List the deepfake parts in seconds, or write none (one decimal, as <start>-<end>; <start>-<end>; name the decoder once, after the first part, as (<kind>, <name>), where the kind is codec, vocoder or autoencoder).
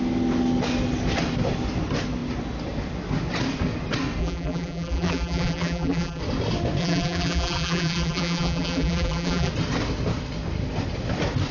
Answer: 4.2-6.2 (vocoder, BigVGAN v2); 6.8-9.5